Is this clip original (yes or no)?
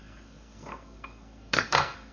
no